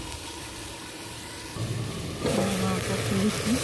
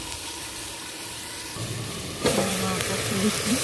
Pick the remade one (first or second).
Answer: second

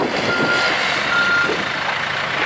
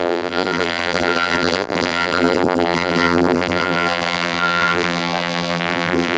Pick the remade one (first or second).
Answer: second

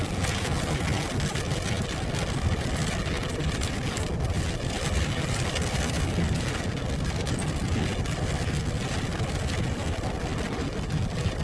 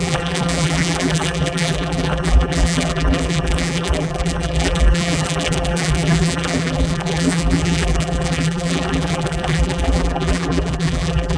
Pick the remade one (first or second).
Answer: second